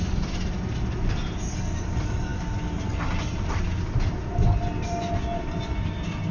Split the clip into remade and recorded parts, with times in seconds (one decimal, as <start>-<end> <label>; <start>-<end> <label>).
0.0-6.3 recorded